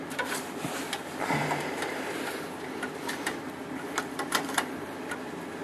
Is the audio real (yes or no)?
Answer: no